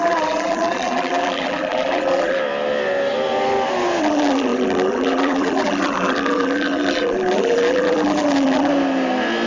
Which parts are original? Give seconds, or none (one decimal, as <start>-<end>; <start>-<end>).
2.4-4.0; 8.7-9.5